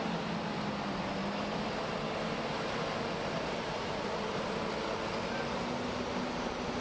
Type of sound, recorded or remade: recorded